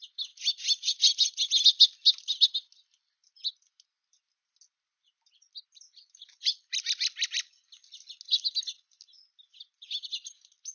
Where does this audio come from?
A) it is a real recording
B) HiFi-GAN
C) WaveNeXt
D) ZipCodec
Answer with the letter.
A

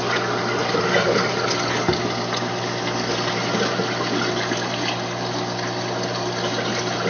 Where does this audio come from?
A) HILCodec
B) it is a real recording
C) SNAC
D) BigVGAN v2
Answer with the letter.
B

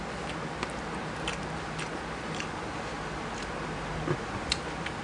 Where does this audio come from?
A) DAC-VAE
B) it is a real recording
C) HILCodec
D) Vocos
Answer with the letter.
B